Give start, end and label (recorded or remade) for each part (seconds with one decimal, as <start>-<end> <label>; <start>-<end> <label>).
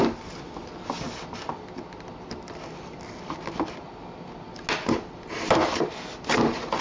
0.0-6.8 recorded